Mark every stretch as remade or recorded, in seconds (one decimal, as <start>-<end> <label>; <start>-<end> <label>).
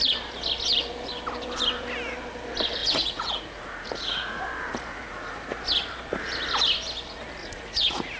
0.0-2.8 recorded; 2.8-4.4 remade; 4.4-4.9 recorded; 4.9-5.6 remade; 5.6-7.4 recorded; 7.4-8.2 remade